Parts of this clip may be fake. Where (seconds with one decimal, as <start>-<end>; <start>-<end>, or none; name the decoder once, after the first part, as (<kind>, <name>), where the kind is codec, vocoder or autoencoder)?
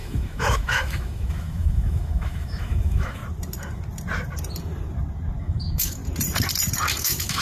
0.0-3.2 (autoencoder, DAC-VAE); 5.4-6.0; 7.0-7.4